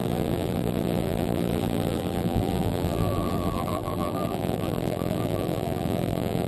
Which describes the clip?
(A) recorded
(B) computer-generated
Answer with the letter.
B